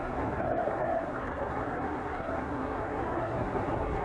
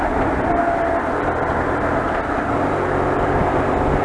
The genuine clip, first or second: second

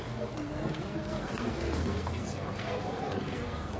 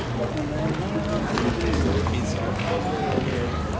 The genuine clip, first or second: second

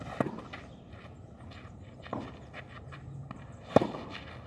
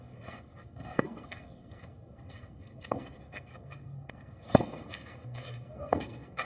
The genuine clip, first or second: first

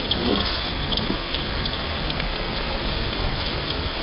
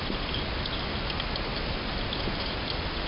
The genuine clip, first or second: second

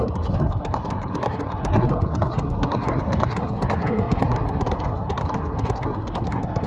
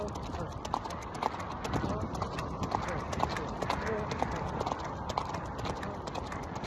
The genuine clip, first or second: second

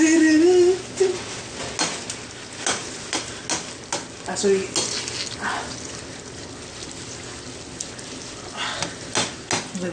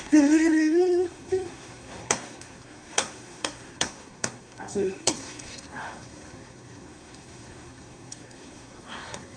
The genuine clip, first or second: first